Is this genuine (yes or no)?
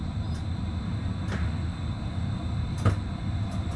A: yes